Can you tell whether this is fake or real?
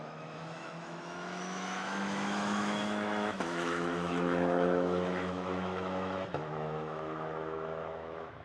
fake